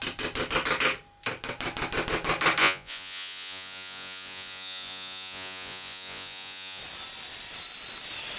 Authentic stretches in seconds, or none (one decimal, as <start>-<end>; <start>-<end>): 0.0-2.6; 6.8-8.4